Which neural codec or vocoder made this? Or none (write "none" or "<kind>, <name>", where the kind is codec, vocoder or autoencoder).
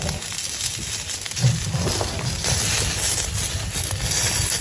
none